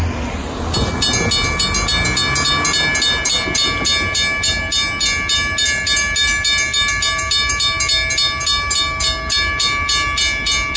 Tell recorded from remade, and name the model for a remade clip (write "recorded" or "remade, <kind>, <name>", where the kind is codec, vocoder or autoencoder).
recorded